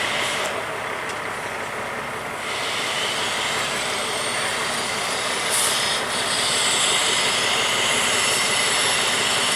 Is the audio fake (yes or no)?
no